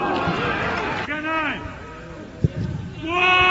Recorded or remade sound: recorded